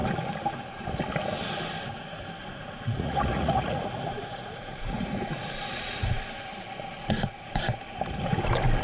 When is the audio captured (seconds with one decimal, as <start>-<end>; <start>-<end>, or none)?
0.0-2.4; 6.2-7.0; 7.8-8.8